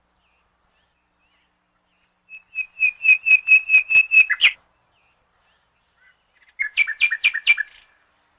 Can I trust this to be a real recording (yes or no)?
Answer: yes